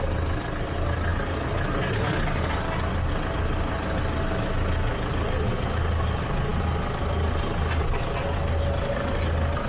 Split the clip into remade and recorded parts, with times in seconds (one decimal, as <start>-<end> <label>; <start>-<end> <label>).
0.0-9.7 recorded